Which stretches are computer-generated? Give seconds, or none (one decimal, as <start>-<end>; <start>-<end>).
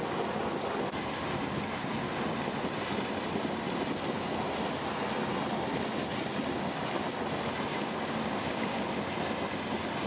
7.7-8.8